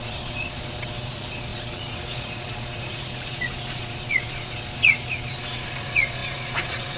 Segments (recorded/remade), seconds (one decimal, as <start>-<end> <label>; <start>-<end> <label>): 0.0-7.0 remade